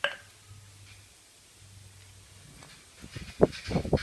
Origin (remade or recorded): recorded